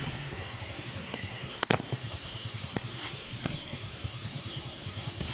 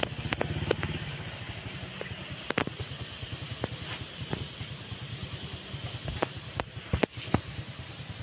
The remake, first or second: first